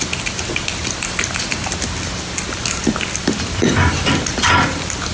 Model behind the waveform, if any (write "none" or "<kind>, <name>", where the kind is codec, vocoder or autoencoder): none